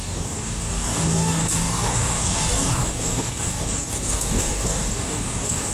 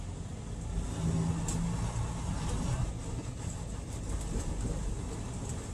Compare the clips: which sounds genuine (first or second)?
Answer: second